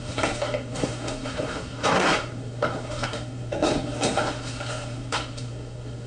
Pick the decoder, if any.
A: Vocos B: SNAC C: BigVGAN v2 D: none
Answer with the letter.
B